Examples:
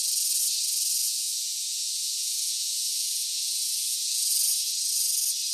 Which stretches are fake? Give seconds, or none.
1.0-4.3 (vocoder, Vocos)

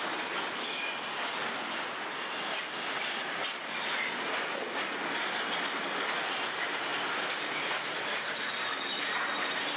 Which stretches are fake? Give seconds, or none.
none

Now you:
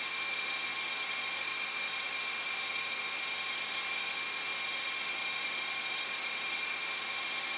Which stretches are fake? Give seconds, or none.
0.0-7.6 (autoencoder, DAC-VAE)